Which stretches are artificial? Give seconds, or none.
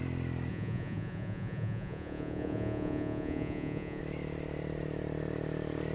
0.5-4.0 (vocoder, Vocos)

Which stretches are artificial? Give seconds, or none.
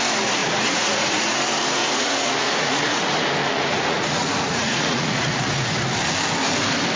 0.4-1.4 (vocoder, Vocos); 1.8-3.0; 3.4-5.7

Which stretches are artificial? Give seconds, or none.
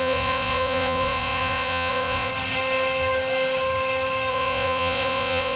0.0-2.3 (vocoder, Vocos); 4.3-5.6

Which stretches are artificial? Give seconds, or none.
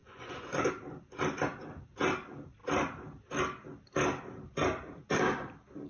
0.0-0.7 (vocoder, Vocos)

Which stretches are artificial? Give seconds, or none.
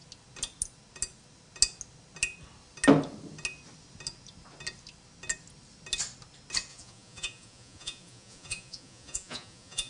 6.7-9.9 (vocoder, Vocos)